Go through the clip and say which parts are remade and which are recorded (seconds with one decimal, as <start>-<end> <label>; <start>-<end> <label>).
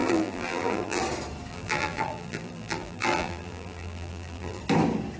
0.0-1.0 remade; 1.0-1.5 recorded; 1.5-4.6 remade; 4.6-5.2 recorded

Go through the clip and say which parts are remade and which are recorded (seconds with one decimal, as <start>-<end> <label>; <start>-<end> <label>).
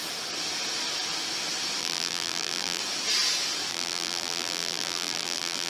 0.0-1.8 recorded; 1.8-2.8 remade; 2.8-3.7 recorded; 3.7-5.7 remade